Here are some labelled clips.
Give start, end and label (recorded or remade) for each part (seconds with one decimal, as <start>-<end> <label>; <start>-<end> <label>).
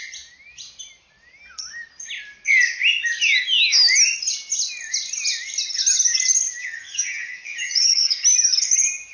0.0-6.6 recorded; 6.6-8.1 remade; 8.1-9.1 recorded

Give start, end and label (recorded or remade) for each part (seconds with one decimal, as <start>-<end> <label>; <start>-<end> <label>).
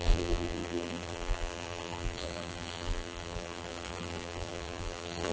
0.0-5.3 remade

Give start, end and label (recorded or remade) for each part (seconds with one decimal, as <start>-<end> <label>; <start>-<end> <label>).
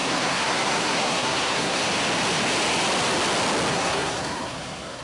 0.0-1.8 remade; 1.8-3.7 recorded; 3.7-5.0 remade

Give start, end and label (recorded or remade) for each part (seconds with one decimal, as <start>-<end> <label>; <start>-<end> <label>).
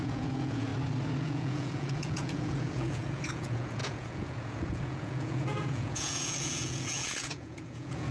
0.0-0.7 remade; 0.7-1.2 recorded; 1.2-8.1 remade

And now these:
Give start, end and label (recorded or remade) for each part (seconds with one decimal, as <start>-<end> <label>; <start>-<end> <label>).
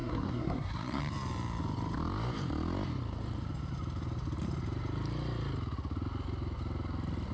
0.0-1.0 remade; 1.0-7.3 recorded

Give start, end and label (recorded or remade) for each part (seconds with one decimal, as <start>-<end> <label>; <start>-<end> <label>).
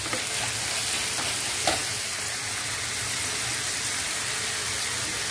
0.0-5.3 recorded